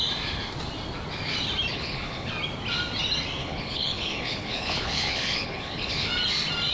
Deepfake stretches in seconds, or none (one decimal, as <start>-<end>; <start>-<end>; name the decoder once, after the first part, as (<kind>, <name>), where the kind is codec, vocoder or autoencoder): 1.7-2.3 (codec, HILCodec); 3.4-6.1